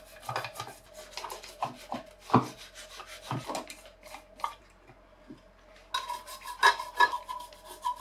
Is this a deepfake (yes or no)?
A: no